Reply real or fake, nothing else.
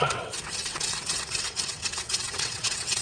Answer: fake